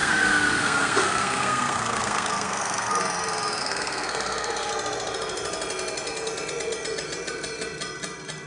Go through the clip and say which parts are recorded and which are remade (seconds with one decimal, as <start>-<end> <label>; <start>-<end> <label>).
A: 0.0-3.0 remade; 3.0-3.6 recorded; 3.6-4.7 remade; 4.7-8.5 recorded